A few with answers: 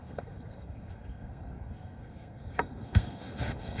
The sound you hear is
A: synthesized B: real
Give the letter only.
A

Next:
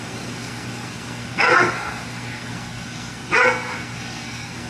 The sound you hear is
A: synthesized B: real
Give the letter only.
A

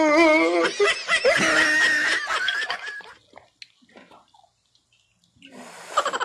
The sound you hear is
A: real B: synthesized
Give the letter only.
A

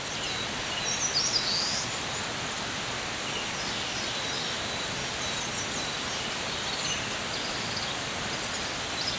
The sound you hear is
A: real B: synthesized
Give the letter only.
A